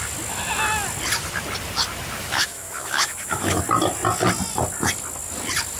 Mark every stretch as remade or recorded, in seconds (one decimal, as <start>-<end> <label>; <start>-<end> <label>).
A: 0.0-2.2 recorded; 2.2-3.6 remade; 3.6-5.8 recorded